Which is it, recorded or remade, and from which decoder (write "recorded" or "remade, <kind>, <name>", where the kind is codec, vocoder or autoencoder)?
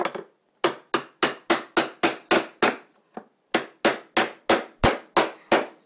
recorded